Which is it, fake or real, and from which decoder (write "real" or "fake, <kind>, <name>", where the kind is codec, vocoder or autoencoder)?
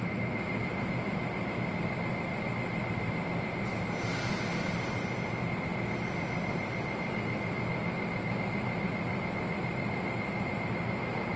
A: real